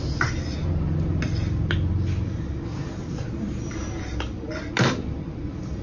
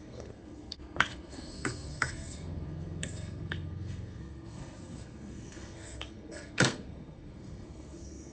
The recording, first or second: first